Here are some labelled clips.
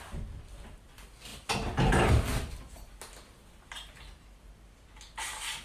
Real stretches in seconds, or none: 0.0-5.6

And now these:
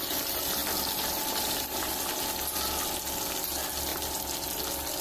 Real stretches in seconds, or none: 0.0-0.6; 2.1-5.0

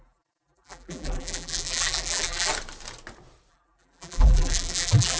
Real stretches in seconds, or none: 2.5-3.5

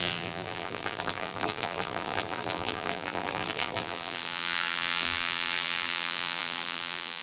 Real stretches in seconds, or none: none

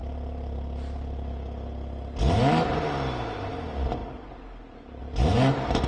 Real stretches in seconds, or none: 0.0-5.9

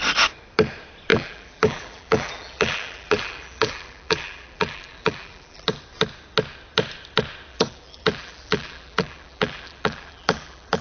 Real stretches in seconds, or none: 0.0-1.1; 5.8-7.5